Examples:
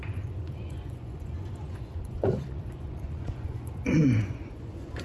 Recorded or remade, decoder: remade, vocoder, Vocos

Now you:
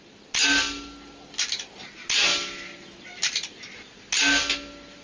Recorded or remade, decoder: recorded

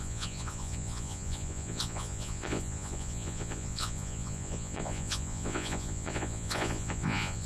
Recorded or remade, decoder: remade, vocoder, Vocos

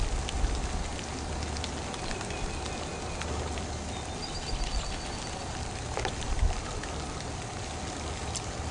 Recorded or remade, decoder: recorded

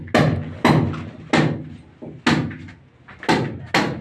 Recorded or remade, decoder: recorded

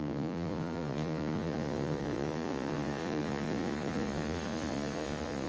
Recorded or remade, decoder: remade, vocoder, Vocos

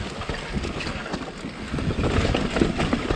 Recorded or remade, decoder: recorded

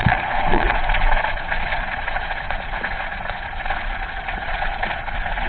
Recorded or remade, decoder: remade, vocoder, Vocos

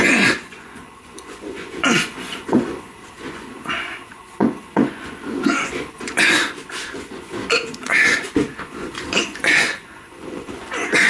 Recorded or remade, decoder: remade, vocoder, Vocos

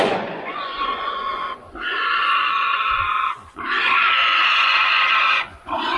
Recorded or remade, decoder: remade, vocoder, Vocos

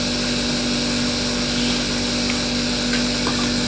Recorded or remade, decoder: recorded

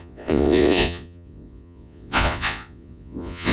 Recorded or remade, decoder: remade, vocoder, Vocos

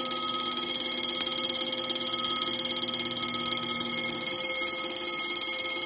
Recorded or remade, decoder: recorded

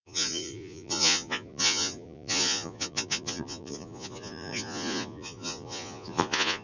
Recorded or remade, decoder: remade, vocoder, Vocos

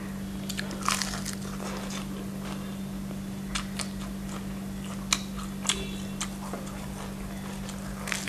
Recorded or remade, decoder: recorded